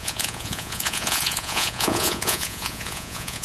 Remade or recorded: remade